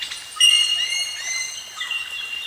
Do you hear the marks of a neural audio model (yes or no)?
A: no